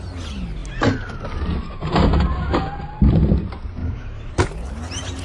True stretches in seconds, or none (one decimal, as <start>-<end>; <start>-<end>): 0.0-3.8; 4.3-5.2